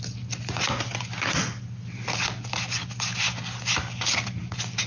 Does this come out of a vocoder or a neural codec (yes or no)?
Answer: no